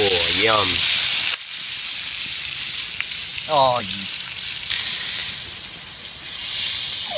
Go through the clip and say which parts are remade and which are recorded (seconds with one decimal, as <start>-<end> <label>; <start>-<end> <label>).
0.0-7.2 recorded